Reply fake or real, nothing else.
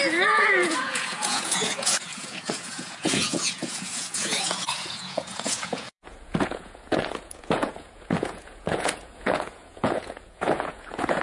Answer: fake